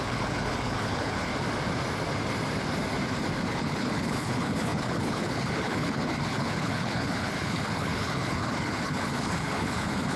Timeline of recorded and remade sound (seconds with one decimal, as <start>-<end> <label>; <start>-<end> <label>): 0.0-1.3 remade; 1.3-3.5 recorded; 3.5-10.2 remade